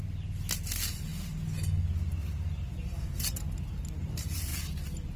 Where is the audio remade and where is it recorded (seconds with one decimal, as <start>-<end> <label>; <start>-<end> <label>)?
0.0-5.2 recorded